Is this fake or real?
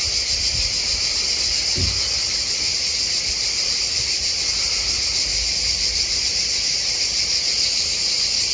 real